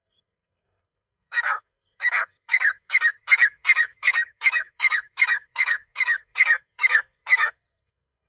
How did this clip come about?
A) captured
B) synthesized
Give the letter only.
B